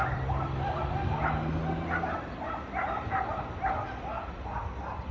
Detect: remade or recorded recorded